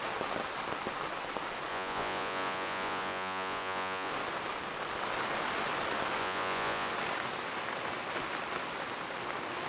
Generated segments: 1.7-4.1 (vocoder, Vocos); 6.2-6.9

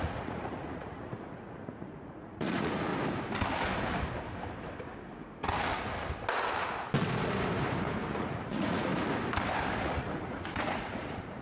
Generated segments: 0.0-2.9 (vocoder, Vocos); 8.1-8.9; 9.8-11.4